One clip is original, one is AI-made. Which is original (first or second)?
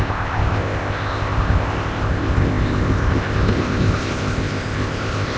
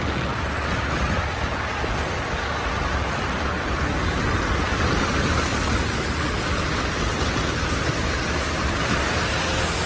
second